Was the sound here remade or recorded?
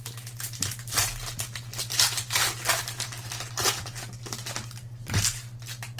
recorded